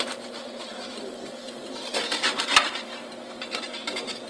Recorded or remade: recorded